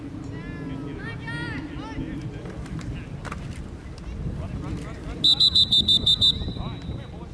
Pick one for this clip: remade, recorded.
recorded